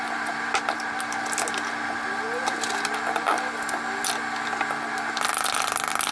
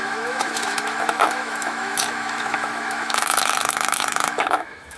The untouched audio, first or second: first